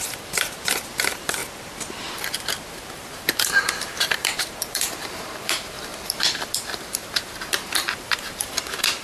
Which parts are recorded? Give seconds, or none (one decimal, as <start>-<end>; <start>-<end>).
1.4-2.7